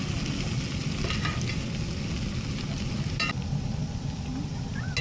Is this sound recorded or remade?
recorded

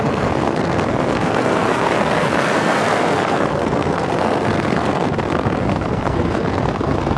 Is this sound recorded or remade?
remade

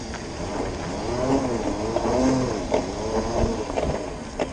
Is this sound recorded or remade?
recorded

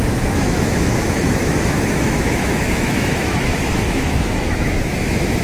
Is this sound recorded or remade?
remade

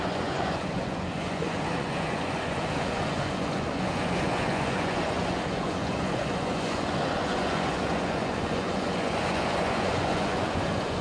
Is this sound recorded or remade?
remade